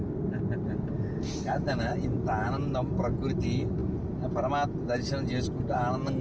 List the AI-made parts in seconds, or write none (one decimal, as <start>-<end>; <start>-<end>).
none